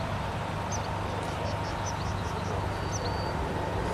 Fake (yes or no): no